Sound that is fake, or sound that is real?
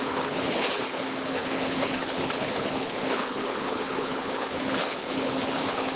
fake